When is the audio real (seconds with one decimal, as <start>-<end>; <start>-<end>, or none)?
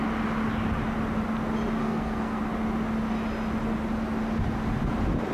0.0-1.8; 2.4-5.3